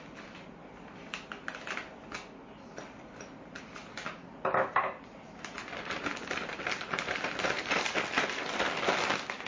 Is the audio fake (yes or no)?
no